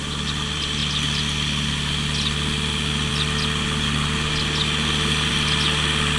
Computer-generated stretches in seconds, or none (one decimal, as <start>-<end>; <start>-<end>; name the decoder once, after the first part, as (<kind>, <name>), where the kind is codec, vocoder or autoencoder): none